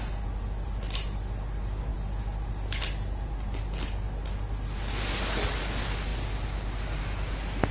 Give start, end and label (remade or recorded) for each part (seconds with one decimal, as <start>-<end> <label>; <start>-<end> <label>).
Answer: 0.0-7.7 recorded